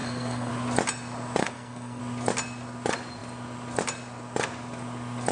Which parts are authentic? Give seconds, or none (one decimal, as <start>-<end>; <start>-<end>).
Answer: 0.5-1.4; 2.0-5.3